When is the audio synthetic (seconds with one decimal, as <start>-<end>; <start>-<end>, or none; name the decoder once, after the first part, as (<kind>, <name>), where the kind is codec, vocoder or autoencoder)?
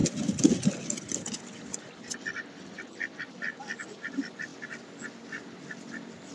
none